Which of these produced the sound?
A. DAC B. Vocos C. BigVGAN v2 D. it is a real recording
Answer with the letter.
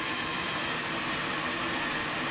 D